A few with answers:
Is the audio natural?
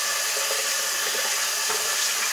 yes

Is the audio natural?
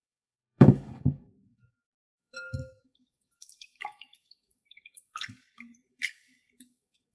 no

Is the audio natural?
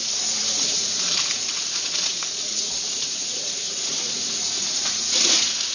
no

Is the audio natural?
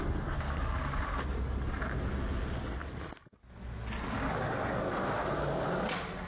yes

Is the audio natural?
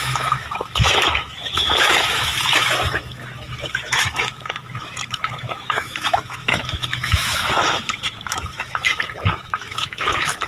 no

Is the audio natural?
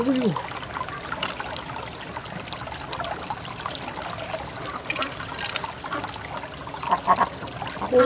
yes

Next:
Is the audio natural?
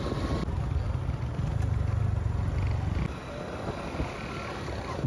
yes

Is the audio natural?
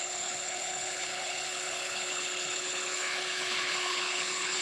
no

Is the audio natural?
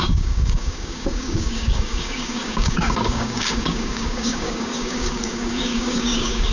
no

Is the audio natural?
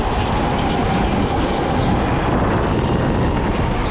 yes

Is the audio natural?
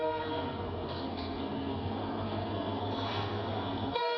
no